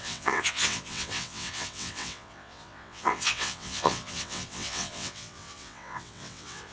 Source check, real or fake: fake